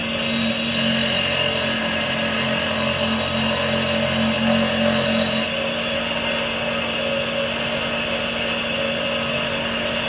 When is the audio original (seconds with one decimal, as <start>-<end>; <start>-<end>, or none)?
0.0-10.1